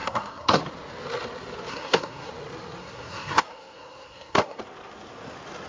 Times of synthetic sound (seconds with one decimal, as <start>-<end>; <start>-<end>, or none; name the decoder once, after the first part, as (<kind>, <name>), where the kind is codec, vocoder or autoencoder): 0.0-0.6 (codec, SNAC); 1.7-2.3; 2.8-4.6